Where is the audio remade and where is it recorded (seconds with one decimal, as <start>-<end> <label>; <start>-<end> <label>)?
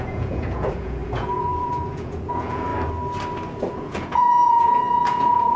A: 0.0-2.7 remade; 2.7-3.7 recorded; 3.7-5.6 remade